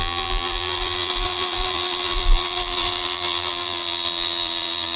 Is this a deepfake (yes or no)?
yes